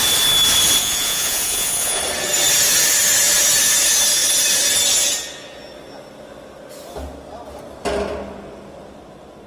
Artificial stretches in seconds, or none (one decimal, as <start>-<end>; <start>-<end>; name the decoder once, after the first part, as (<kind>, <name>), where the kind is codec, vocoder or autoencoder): 0.8-2.0 (vocoder, Vocos)